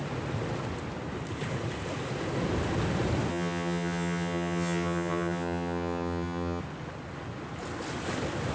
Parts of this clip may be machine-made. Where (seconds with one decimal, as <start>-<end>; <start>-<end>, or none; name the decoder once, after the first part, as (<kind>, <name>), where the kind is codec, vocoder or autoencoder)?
3.3-6.6 (vocoder, HiFi-GAN)